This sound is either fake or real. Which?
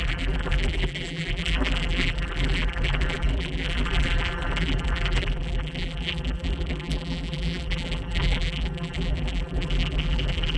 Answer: fake